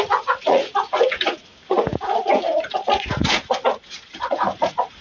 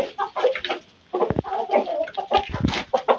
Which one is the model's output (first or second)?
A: first